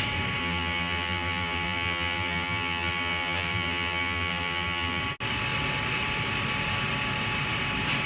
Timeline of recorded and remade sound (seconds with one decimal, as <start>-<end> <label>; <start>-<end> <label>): 0.0-0.4 recorded; 0.4-5.0 remade; 5.0-8.1 recorded